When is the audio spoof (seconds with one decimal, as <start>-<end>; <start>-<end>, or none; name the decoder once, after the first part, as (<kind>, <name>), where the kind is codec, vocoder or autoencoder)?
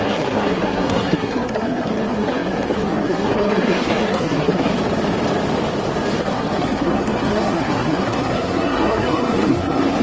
0.0-4.7 (codec, SNAC); 6.2-10.0